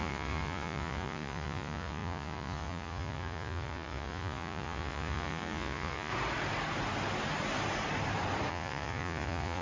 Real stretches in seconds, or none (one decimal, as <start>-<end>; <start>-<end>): 6.1-8.5